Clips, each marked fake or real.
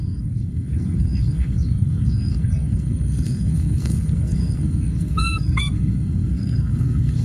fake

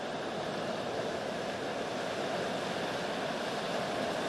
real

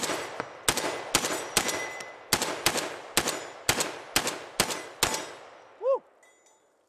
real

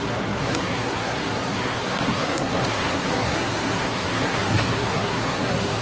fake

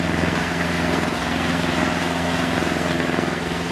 fake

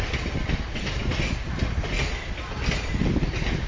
real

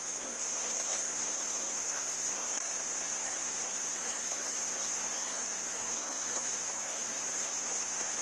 fake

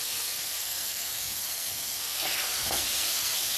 fake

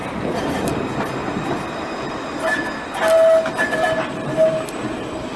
real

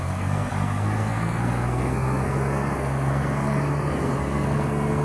fake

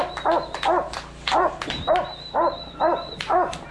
real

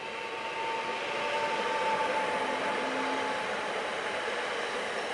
real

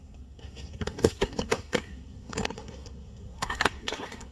fake